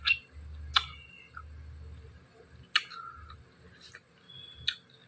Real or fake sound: real